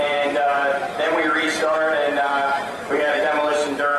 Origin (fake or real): fake